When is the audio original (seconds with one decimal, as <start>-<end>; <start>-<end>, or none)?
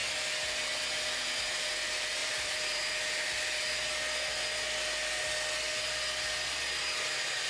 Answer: 0.0-2.2; 2.9-7.5